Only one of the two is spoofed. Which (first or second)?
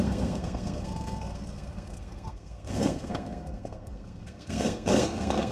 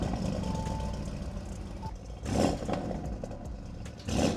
first